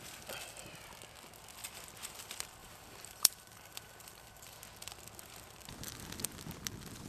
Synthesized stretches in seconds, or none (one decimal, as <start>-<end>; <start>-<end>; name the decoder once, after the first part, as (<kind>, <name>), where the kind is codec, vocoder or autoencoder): 2.6-4.6 (vocoder, BigVGAN v2)